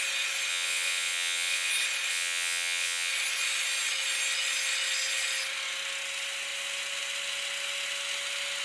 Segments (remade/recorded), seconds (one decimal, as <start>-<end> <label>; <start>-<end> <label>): 0.0-0.5 recorded; 0.5-1.7 remade; 1.7-2.1 recorded; 2.1-3.1 remade; 3.1-8.6 recorded